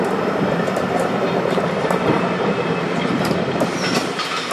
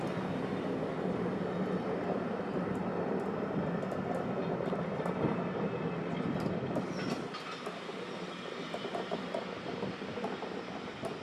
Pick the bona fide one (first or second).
second